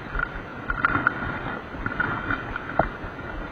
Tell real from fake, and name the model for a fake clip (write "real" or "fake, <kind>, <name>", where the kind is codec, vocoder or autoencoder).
real